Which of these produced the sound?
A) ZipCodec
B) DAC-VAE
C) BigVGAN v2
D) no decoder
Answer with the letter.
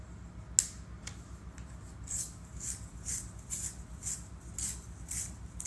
D